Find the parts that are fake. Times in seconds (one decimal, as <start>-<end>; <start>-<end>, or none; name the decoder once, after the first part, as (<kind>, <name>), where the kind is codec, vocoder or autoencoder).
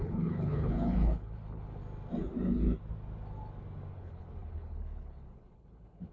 0.0-1.8 (codec, HILCodec); 3.9-6.1